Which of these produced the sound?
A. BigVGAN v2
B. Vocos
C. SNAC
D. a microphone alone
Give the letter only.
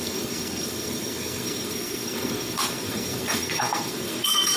C